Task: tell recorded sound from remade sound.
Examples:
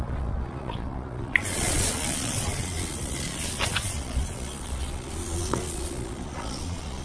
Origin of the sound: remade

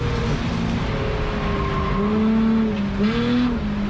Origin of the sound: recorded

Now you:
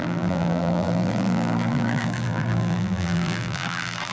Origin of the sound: remade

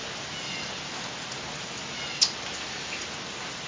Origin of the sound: recorded